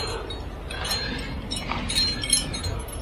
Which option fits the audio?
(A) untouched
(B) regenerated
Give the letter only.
A